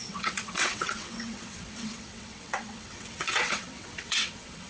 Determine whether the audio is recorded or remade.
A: remade